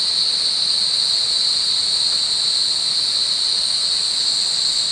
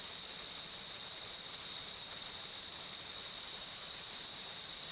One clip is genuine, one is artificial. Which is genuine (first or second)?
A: first